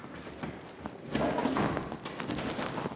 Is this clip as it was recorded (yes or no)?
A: yes